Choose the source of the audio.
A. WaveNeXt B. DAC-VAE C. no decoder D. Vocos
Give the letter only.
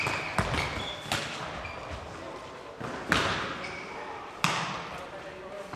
C